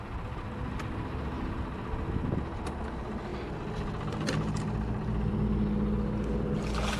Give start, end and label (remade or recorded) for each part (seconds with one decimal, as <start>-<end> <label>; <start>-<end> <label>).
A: 0.0-7.0 recorded